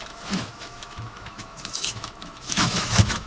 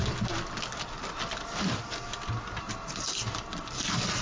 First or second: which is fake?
first